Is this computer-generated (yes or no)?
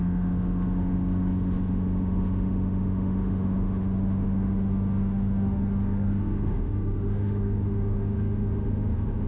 yes